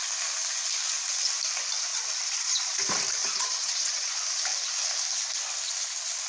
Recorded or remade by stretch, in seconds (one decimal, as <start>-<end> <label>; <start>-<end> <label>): 0.0-1.9 recorded; 1.9-2.8 remade; 2.8-3.2 recorded; 3.2-4.1 remade; 4.1-6.3 recorded